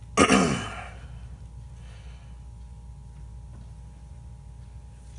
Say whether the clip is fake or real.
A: real